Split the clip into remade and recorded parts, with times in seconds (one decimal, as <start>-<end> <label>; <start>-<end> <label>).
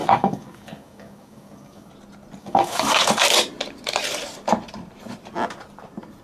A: 0.0-1.9 remade; 1.9-2.4 recorded; 2.4-3.3 remade; 3.3-6.2 recorded